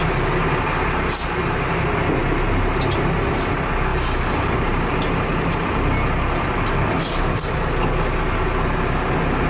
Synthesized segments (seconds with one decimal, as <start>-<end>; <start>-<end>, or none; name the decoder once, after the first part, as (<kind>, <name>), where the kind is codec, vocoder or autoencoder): none